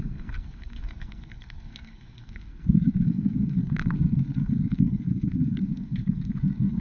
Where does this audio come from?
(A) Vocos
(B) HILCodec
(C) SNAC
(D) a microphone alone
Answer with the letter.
C